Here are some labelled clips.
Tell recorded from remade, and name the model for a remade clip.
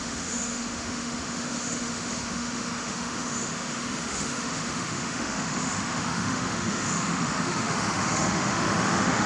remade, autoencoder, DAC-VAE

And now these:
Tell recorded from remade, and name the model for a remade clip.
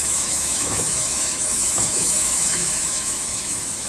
remade, autoencoder, DAC-VAE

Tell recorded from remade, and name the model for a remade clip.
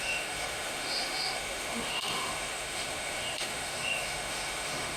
remade, autoencoder, DAC-VAE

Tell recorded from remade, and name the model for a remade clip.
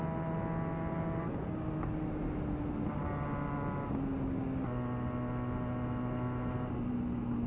recorded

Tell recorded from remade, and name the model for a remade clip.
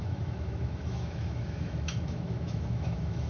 remade, autoencoder, DAC-VAE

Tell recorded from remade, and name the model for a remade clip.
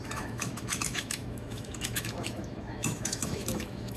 remade, autoencoder, DAC-VAE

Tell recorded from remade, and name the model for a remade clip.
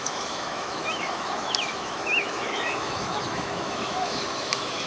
remade, autoencoder, DAC-VAE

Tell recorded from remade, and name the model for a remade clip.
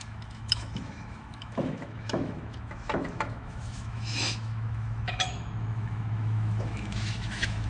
remade, autoencoder, DAC-VAE